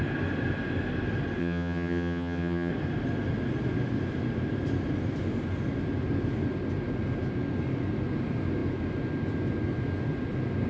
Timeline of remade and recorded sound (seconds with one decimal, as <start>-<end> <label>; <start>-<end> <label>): 0.0-1.4 recorded; 1.4-2.7 remade; 2.7-10.7 recorded